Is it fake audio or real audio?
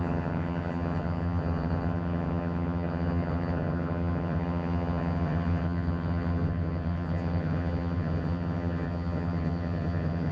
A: fake